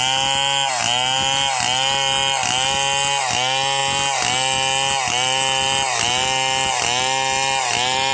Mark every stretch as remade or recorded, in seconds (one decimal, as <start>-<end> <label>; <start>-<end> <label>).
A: 0.0-8.1 recorded